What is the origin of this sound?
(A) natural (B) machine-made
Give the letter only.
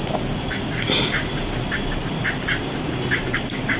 A